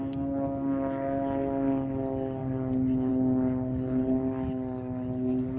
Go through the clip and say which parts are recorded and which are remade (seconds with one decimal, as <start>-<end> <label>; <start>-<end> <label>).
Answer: 0.0-5.6 recorded